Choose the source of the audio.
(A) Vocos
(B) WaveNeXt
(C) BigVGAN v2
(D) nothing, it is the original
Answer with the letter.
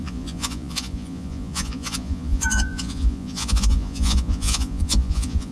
A